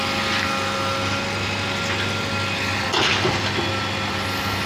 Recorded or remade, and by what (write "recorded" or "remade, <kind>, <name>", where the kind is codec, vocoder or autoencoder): recorded